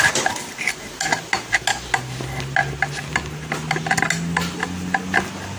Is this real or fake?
real